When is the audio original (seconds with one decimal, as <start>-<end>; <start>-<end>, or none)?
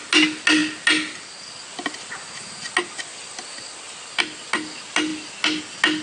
0.0-6.0